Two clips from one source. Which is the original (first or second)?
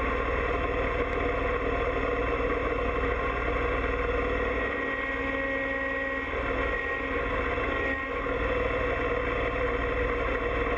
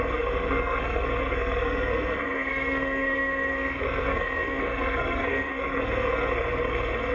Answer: first